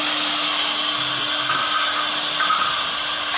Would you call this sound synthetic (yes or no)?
no